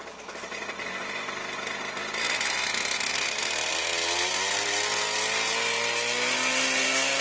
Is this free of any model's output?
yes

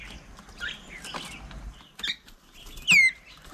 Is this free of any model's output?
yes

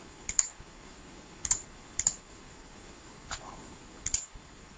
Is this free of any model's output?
no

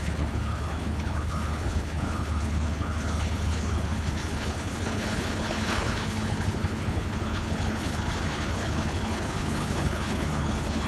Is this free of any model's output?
no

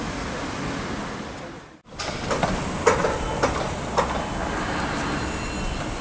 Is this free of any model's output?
yes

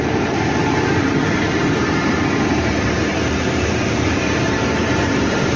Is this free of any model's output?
no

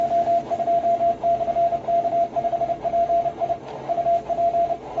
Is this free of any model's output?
yes